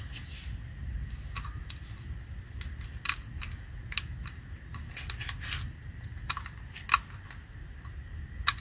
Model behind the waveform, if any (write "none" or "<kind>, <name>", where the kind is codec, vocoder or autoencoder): none